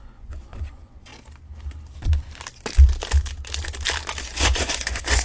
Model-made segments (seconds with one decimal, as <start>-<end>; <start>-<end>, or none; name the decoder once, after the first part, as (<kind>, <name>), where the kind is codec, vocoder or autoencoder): 0.0-1.1 (vocoder, Vocos); 4.2-5.2